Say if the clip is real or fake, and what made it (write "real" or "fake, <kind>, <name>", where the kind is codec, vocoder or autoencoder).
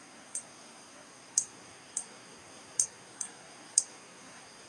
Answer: fake, codec, SNAC